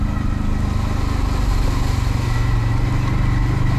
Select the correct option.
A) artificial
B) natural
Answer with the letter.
B